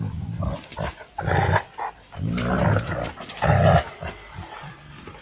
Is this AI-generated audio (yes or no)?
no